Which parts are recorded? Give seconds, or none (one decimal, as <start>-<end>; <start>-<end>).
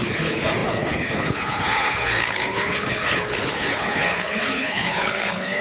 none